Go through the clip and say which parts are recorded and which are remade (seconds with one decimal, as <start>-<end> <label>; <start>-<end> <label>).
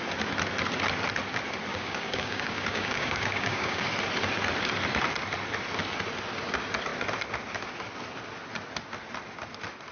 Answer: 0.0-1.7 recorded; 1.7-3.9 remade; 3.9-9.9 recorded